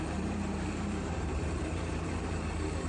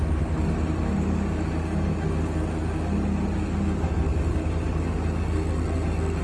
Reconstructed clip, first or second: first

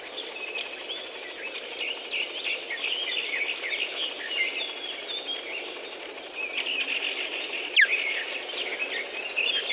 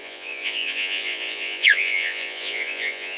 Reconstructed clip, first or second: second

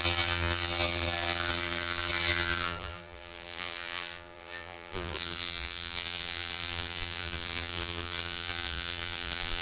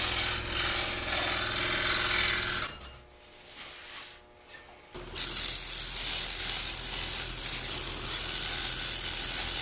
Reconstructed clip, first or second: first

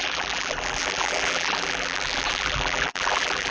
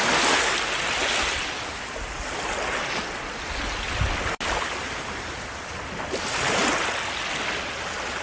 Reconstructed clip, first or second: first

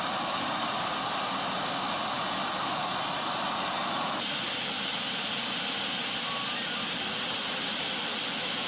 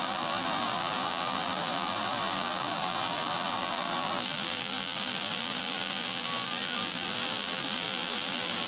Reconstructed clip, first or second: second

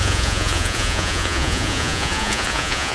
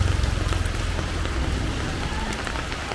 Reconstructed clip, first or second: first